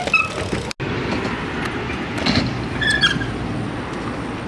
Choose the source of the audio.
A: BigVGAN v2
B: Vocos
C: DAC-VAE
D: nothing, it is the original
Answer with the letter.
D